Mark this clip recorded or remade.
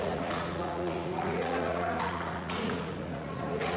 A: remade